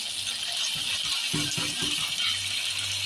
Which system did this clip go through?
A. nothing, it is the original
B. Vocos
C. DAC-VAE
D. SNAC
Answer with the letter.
A